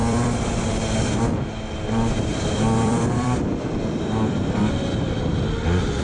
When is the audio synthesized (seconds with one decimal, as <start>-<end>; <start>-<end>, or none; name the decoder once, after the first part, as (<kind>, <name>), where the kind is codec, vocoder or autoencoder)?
0.0-0.7 (vocoder, BigVGAN v2); 2.3-4.7